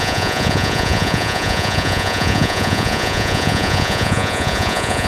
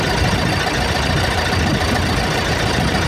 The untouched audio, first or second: second